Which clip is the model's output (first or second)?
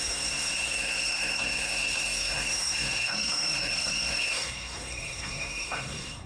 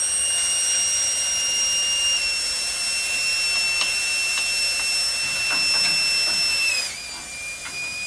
first